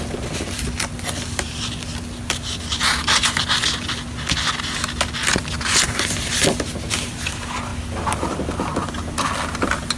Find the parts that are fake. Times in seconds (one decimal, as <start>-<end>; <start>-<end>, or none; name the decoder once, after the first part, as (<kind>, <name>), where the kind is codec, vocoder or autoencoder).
none